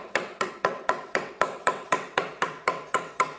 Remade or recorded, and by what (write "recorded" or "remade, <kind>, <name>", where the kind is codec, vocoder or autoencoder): remade, vocoder, WaveNeXt